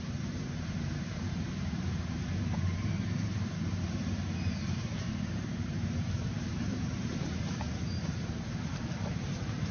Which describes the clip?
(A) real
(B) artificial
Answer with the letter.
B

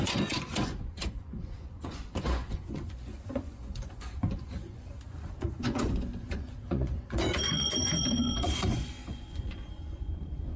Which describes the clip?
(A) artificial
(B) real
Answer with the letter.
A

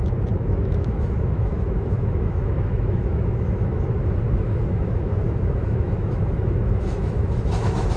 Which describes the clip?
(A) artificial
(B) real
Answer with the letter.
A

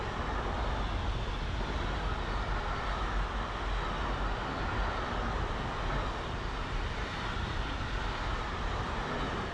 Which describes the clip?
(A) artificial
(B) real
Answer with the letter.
B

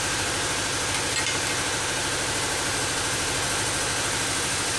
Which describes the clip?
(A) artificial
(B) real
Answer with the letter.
B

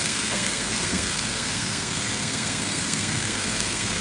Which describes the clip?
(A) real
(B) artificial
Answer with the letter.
B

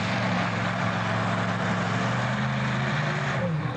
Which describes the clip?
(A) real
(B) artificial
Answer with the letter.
A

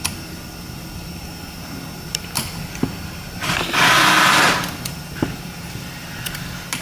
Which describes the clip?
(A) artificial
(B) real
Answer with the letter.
B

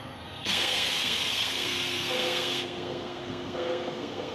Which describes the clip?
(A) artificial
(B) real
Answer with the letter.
A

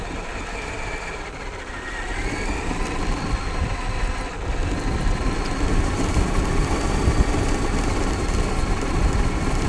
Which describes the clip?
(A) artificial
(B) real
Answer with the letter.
B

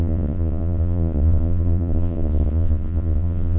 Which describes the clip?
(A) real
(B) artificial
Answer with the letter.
B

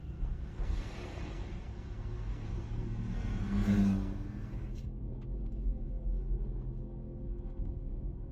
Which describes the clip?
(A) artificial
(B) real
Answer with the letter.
A